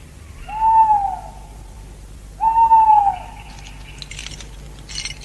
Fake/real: real